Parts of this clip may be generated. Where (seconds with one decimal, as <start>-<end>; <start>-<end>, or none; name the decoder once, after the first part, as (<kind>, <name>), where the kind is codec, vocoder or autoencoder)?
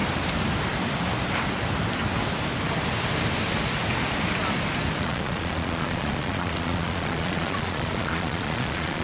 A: 5.0-9.0 (vocoder, Vocos)